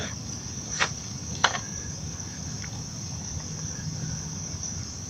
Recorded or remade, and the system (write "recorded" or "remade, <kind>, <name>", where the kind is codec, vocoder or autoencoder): remade, codec, DAC